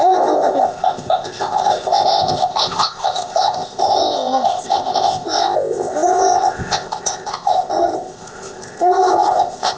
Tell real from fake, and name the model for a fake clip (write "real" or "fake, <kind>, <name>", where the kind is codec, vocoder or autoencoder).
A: fake, codec, ZipCodec